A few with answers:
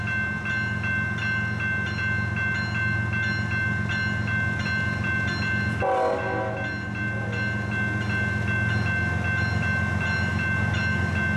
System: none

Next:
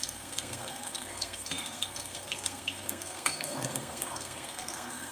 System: codec, SNAC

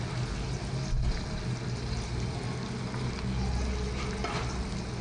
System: none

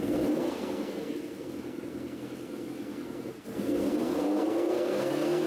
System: codec, SNAC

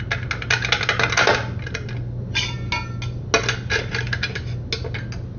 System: none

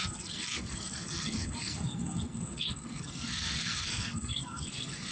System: codec, SNAC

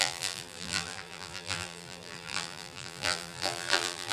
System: vocoder, BigVGAN v2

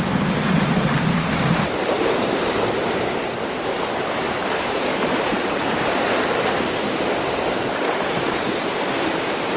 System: vocoder, BigVGAN v2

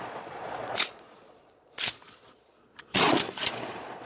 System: vocoder, Vocos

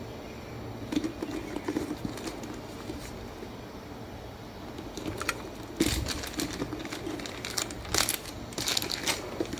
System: none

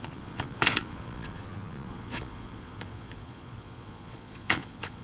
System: vocoder, Vocos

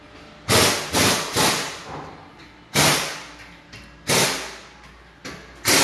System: none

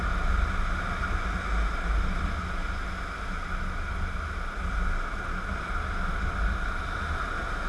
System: none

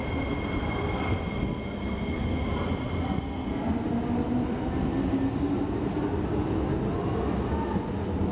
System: none